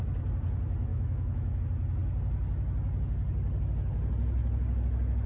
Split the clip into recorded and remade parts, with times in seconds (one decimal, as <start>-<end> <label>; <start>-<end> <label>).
0.0-0.9 recorded; 0.9-1.6 remade; 1.6-5.3 recorded